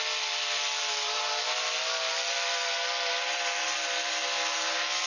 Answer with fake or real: real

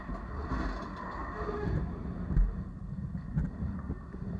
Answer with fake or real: real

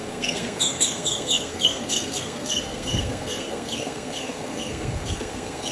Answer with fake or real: fake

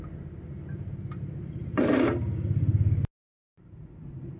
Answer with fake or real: real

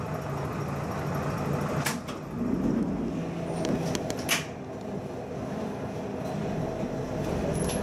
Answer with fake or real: real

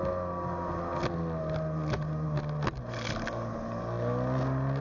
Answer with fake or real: real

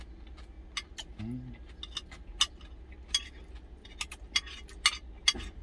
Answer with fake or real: real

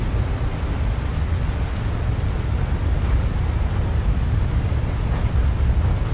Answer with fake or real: real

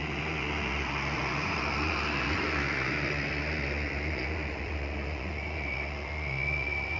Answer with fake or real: fake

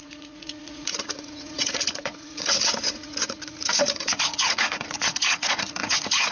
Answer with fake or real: fake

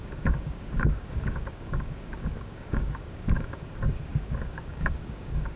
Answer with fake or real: fake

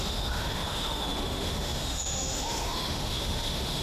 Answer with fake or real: fake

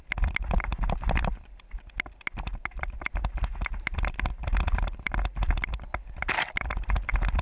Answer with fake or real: real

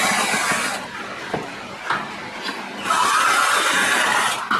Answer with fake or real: real